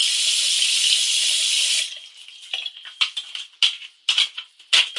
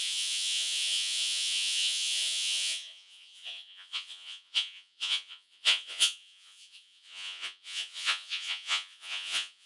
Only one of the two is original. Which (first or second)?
first